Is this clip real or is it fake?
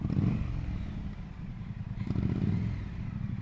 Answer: fake